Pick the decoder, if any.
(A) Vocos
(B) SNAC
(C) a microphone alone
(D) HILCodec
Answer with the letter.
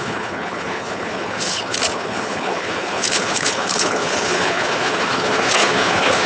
D